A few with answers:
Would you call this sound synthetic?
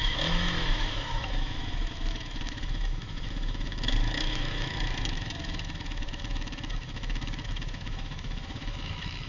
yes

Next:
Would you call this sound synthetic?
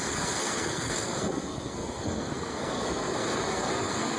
yes